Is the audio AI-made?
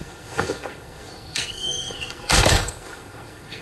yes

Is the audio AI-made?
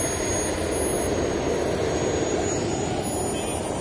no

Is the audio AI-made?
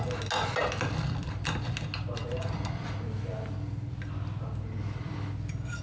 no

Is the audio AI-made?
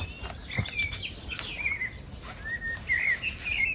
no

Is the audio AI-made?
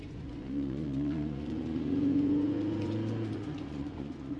yes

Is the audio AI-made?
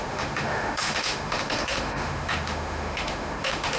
yes